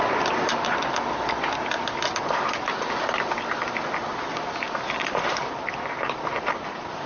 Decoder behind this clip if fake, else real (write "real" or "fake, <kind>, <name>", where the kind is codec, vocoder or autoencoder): real